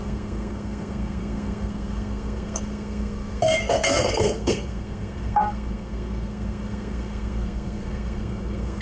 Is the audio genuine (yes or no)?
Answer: no